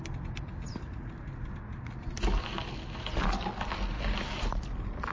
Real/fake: real